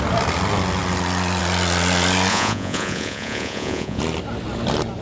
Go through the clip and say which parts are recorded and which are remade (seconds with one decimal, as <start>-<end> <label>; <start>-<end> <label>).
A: 0.0-2.3 recorded; 2.3-4.0 remade; 4.0-5.0 recorded